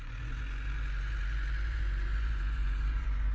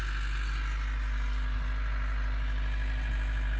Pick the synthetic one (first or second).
first